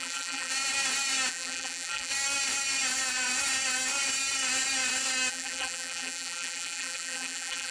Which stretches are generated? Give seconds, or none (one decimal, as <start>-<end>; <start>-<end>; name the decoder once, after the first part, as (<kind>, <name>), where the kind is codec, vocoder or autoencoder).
0.0-0.5 (vocoder, BigVGAN v2); 1.3-2.1; 5.3-7.7